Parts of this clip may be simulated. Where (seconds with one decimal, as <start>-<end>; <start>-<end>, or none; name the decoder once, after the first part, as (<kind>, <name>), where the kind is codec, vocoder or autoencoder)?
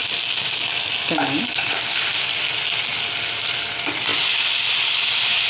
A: 3.3-4.1 (vocoder, BigVGAN v2); 4.7-5.5